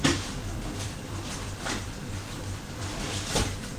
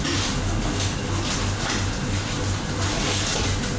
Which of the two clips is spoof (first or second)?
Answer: first